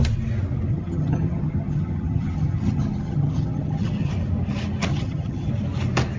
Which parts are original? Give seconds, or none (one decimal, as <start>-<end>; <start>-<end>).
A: 0.0-0.7; 4.1-4.9; 5.5-6.2